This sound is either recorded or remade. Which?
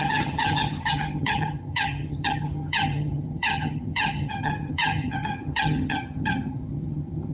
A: remade